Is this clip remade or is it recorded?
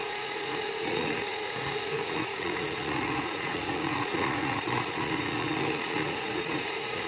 remade